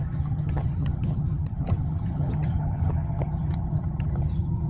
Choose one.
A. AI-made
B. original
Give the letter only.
A